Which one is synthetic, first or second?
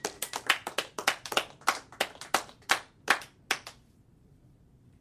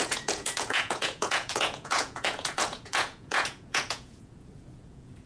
second